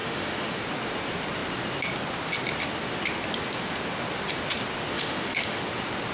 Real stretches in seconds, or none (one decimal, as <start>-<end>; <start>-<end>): 0.6-4.9; 5.6-6.1